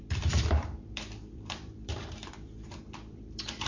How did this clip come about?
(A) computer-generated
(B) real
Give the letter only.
A